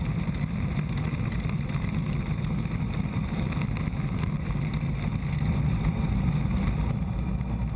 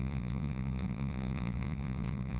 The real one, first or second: first